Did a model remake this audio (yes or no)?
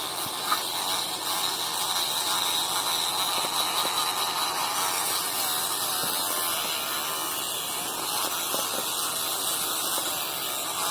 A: no